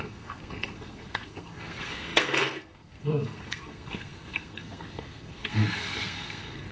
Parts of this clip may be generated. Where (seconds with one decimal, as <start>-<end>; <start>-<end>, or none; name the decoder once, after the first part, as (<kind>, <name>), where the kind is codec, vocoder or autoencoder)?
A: 0.0-6.7 (codec, SNAC)